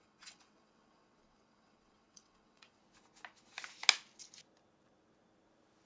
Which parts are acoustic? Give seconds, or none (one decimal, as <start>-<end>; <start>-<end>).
2.8-5.9